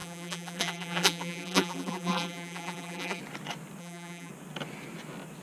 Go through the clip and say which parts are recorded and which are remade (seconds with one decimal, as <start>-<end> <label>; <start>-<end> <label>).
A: 0.0-3.2 remade; 3.2-3.8 recorded; 3.8-4.3 remade; 4.3-5.4 recorded